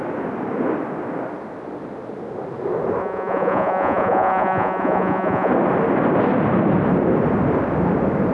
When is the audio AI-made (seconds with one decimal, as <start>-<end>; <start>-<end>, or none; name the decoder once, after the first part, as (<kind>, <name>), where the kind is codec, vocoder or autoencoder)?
3.0-5.5 (vocoder, Vocos)